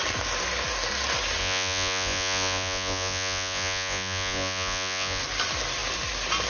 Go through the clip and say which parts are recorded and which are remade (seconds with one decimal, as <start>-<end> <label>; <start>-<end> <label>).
0.0-1.4 recorded; 1.4-5.2 remade; 5.2-6.5 recorded